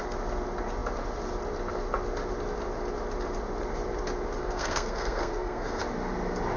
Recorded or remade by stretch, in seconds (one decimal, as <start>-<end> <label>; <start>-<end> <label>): 0.0-4.4 recorded; 4.4-5.8 remade; 5.8-6.6 recorded